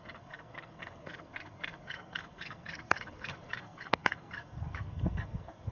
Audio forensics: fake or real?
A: fake